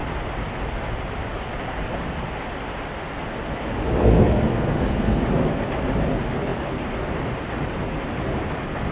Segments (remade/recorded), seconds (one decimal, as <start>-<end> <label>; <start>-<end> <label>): 0.0-4.0 recorded; 4.0-5.2 remade; 5.2-8.9 recorded

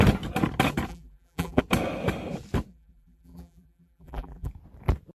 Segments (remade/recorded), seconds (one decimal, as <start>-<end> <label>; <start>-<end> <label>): 0.0-0.9 recorded; 0.9-1.6 remade; 1.6-2.7 recorded; 2.7-4.5 remade; 4.5-5.2 recorded

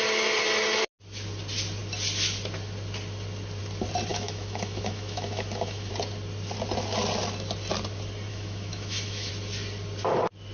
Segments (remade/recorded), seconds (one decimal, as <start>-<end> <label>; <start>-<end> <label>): 0.0-4.1 recorded; 4.1-5.9 remade; 5.9-8.3 recorded; 8.3-9.3 remade; 9.3-10.5 recorded

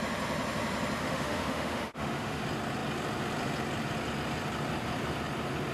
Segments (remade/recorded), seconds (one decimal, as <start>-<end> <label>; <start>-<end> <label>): 0.0-1.0 recorded; 1.0-2.4 remade; 2.4-5.7 recorded

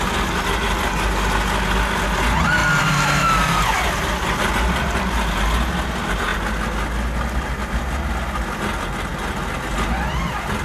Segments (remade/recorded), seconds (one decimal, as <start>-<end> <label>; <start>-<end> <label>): 0.0-10.6 recorded

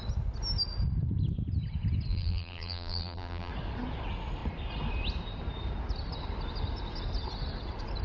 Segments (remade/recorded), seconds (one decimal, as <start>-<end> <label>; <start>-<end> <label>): 0.0-2.1 recorded; 2.1-3.5 remade; 3.5-8.0 recorded

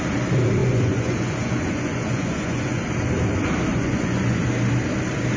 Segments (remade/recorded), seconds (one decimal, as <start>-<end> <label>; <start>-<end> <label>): 0.0-0.6 recorded; 0.6-2.9 remade; 2.9-3.7 recorded; 3.7-4.4 remade; 4.4-5.4 recorded

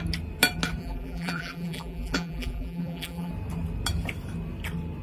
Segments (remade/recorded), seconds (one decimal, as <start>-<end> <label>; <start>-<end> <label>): 0.0-0.8 recorded; 0.8-3.3 remade; 3.3-5.0 recorded